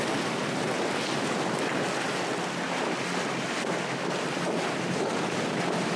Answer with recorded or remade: recorded